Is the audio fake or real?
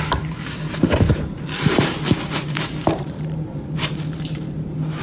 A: fake